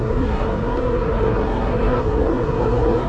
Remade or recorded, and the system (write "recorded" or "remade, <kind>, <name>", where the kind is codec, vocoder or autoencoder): remade, codec, SNAC